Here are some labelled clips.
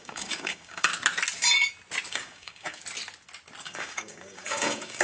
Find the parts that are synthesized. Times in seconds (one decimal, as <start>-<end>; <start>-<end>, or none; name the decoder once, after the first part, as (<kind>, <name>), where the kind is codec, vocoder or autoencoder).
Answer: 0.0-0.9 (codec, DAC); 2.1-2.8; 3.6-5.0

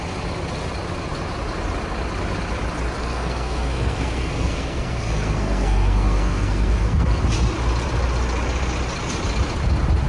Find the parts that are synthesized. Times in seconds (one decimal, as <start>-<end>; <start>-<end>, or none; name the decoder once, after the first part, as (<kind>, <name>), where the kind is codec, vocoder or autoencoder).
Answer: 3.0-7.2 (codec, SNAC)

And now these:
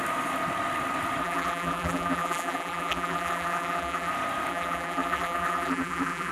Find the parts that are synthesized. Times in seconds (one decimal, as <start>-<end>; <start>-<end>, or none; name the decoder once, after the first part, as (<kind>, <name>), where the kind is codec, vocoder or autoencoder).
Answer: 1.2-4.1 (vocoder, BigVGAN v2); 4.5-6.3

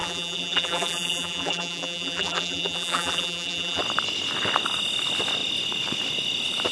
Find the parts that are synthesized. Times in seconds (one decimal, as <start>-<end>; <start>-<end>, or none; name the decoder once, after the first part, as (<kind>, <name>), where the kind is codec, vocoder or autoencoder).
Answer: 0.0-3.8 (vocoder, BigVGAN v2)

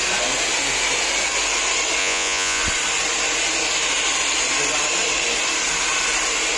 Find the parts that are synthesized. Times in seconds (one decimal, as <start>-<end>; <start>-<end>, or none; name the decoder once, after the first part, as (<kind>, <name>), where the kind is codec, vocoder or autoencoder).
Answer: 2.0-2.6 (vocoder, Vocos)

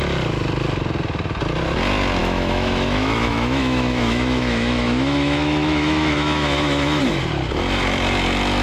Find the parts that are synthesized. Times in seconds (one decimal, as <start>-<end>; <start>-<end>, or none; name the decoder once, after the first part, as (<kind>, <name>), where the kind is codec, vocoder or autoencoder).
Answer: 2.2-7.0 (autoencoder, DAC-VAE)

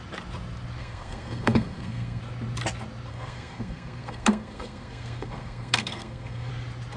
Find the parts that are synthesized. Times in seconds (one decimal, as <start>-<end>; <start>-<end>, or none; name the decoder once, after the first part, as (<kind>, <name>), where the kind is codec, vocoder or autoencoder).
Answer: 0.8-2.2 (codec, SNAC); 3.1-6.5

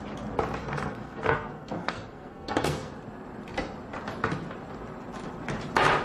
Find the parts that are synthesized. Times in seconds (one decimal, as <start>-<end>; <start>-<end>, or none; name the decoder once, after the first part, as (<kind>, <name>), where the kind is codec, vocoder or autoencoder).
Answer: 0.6-2.9 (codec, SNAC)